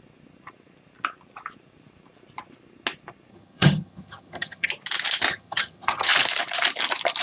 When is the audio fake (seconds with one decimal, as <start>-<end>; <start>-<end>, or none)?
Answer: 3.3-4.7; 5.3-6.1